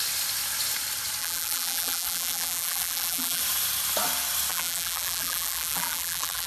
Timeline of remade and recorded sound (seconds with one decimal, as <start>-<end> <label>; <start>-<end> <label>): 0.0-1.2 recorded; 1.2-3.4 remade; 3.4-4.5 recorded; 4.5-6.5 remade